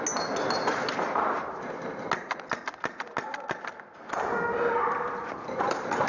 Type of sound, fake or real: real